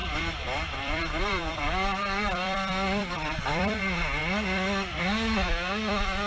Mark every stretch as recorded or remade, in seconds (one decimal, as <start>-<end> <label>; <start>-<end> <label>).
0.0-3.8 remade; 3.8-6.3 recorded